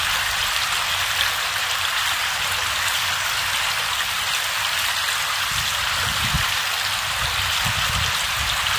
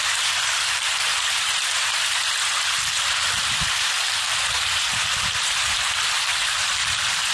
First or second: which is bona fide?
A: first